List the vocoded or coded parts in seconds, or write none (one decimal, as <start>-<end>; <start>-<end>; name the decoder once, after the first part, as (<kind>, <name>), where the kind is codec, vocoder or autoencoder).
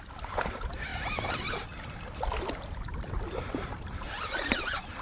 0.0-0.9 (vocoder, BigVGAN v2); 1.5-5.0